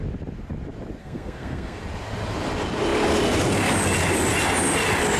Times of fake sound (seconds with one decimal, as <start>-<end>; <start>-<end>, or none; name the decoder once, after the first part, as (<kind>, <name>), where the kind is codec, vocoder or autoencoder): 1.0-1.8 (codec, SNAC)